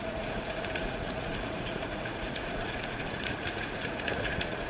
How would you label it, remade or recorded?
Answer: remade